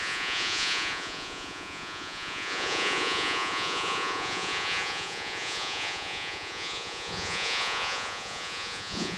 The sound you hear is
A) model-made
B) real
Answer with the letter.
A